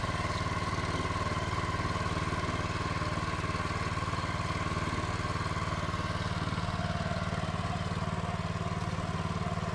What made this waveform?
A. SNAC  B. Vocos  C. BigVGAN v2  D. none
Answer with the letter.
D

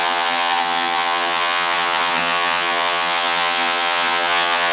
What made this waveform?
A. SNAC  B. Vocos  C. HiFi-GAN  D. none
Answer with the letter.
C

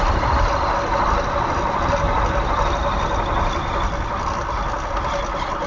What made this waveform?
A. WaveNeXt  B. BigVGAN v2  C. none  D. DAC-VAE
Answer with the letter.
C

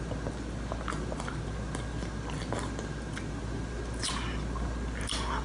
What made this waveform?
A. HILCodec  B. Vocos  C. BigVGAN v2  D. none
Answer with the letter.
D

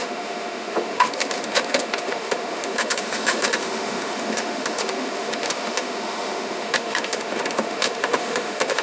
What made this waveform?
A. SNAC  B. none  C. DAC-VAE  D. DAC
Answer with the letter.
C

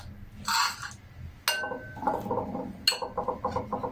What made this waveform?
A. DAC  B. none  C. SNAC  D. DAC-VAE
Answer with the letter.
B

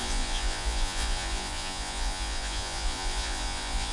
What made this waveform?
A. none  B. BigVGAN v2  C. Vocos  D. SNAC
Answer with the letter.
C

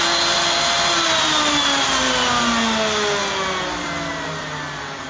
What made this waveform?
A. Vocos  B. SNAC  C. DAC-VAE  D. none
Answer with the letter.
D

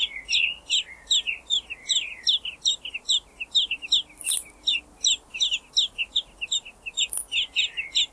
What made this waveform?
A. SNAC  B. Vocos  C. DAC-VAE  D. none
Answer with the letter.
D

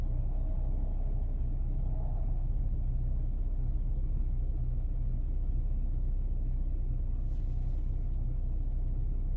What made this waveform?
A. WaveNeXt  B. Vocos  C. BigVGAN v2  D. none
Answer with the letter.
D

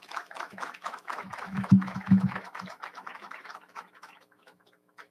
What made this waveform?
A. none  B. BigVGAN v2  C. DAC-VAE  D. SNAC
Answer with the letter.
C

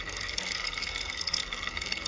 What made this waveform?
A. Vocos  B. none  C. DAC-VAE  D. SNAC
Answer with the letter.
D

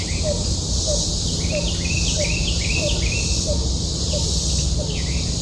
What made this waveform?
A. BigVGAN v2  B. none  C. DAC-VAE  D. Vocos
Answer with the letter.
B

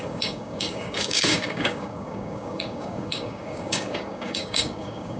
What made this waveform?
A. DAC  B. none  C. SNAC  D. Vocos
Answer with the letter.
A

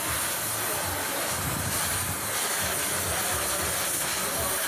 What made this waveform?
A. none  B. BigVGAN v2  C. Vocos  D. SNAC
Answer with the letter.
A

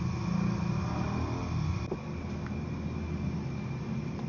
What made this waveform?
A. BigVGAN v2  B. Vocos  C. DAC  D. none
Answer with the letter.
D